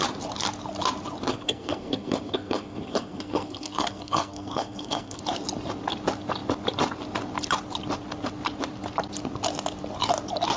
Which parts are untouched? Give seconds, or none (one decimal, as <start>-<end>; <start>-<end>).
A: 0.0-1.3; 5.2-10.6